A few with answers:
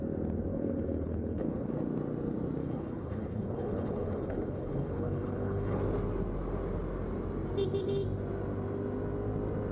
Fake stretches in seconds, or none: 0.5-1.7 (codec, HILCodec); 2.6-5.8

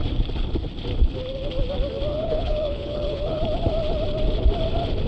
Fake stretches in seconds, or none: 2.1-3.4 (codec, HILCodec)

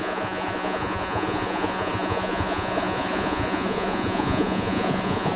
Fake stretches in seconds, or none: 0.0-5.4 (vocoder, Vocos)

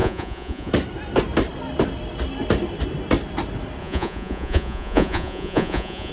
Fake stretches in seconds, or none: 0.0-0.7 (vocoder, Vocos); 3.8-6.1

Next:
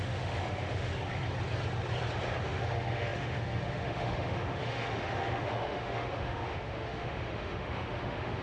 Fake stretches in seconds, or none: 0.0-0.9 (autoencoder, DAC-VAE); 2.4-8.4

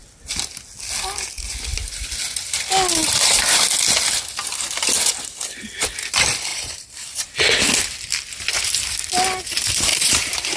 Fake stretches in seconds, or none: 3.0-3.7 (vocoder, BigVGAN v2); 6.5-7.3; 9.9-10.6

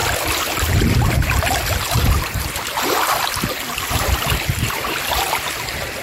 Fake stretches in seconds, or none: none

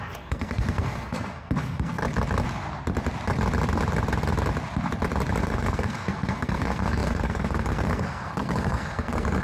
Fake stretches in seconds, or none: 0.0-2.0 (codec, SNAC); 5.4-9.4